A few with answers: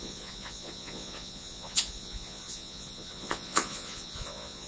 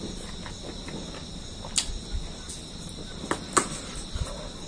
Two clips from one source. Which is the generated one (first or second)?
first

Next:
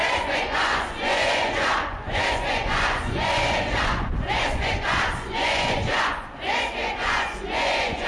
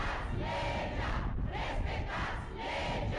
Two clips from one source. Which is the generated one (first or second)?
first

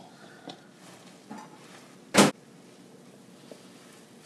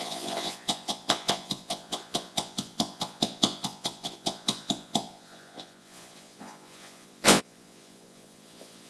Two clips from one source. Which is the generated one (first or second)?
second